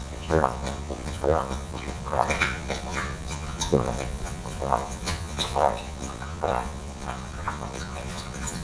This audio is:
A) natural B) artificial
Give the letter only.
B